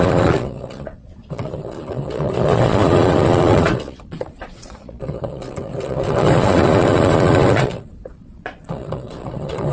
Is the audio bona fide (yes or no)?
no